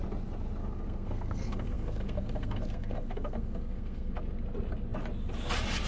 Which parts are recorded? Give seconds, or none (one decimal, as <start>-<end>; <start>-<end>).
0.0-0.6; 4.1-5.9